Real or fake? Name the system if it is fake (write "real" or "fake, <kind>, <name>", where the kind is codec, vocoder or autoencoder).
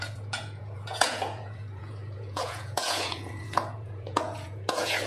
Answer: fake, vocoder, Vocos